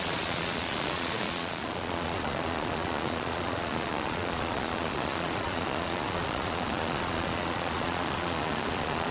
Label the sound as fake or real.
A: fake